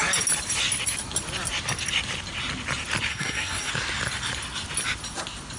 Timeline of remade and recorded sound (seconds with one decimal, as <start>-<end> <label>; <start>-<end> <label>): 0.0-3.1 recorded; 3.1-3.7 remade; 3.7-5.6 recorded

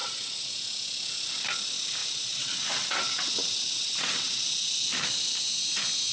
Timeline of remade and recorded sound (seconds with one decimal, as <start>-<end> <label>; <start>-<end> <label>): 0.0-0.5 remade; 0.5-2.0 recorded; 2.0-4.5 remade; 4.5-6.1 recorded

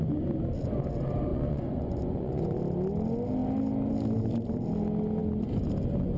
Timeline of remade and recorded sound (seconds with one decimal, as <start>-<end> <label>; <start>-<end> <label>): 0.0-1.3 recorded; 1.3-2.6 remade; 2.6-6.2 recorded